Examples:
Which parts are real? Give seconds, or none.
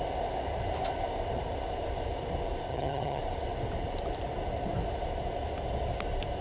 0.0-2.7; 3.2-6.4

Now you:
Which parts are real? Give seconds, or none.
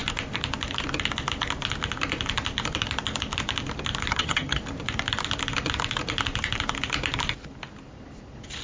0.0-4.1; 4.6-8.6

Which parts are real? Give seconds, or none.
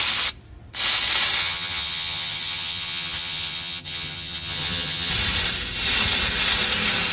0.0-1.4; 5.1-7.1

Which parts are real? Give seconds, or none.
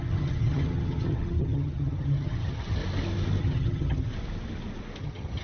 2.8-3.4; 4.1-5.0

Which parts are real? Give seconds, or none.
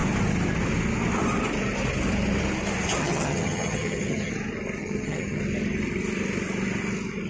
0.0-3.0; 4.3-4.8; 5.4-7.3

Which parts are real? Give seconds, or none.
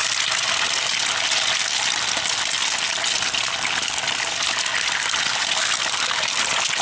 0.0-6.8